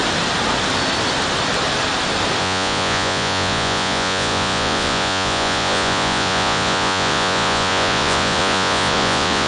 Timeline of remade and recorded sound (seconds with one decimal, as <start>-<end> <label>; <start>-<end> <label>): 0.0-2.4 recorded; 2.4-9.5 remade